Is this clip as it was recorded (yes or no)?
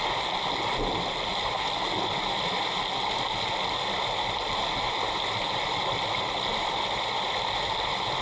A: yes